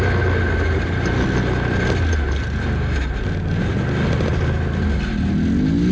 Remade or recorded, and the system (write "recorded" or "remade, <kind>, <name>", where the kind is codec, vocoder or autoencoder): recorded